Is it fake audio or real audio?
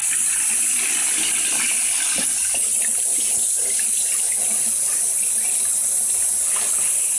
real